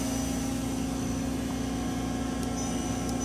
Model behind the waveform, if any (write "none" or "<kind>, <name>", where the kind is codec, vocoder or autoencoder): none